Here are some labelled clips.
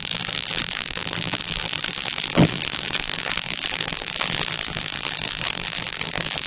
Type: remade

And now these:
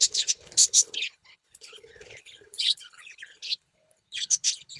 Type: remade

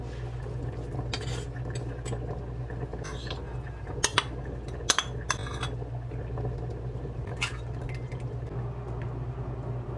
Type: recorded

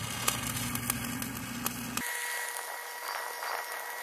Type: recorded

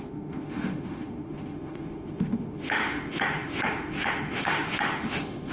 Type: remade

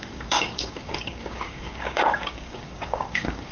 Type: remade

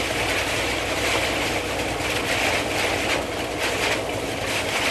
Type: recorded